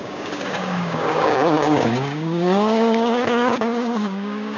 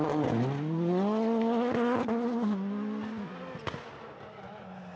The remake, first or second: first